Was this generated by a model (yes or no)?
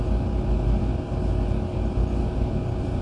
no